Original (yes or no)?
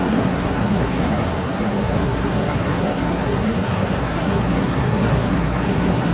no